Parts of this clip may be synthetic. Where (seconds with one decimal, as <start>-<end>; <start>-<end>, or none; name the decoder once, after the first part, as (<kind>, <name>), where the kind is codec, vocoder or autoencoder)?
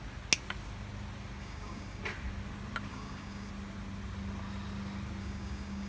1.4-2.0 (codec, DAC); 2.9-3.5; 5.2-5.9